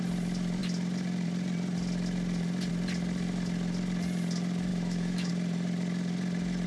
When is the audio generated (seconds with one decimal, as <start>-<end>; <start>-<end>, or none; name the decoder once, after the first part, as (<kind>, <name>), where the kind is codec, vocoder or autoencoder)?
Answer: 4.7-5.3 (autoencoder, DAC-VAE)

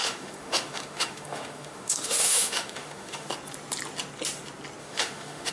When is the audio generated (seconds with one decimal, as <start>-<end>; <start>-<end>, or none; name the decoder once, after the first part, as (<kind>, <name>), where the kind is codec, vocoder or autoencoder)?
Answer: 0.0-3.3 (autoencoder, DAC-VAE); 4.8-5.5